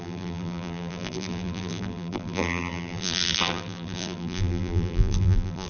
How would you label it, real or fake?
fake